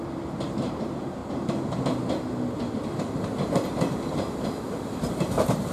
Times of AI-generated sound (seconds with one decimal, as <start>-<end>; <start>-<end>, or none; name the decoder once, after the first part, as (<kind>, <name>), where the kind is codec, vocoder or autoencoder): 0.0-1.2 (vocoder, BigVGAN v2); 4.6-5.7